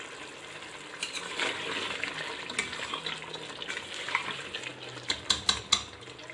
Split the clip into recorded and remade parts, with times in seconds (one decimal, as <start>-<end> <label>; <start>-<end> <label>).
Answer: 0.0-6.3 recorded